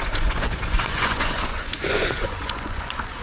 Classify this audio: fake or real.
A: fake